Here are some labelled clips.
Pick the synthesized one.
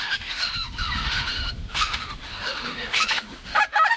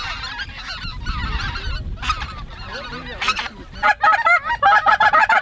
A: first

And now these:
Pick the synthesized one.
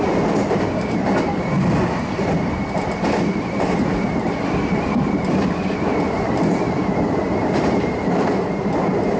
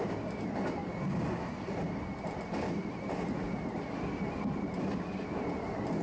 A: first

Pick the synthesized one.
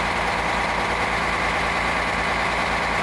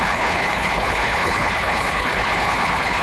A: second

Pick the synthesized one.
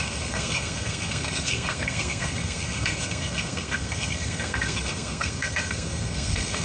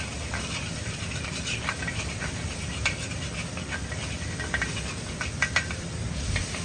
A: first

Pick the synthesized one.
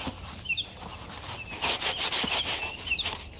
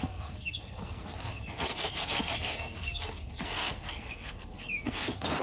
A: second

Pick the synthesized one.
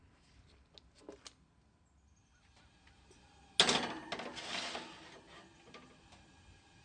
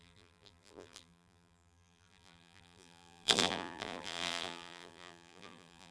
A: second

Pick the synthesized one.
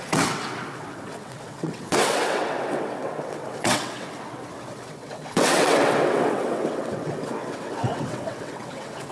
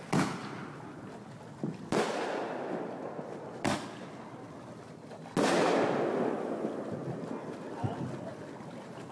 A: first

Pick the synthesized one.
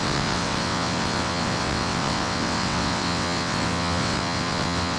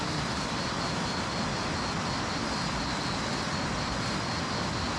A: first